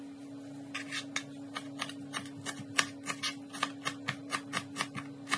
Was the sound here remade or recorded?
recorded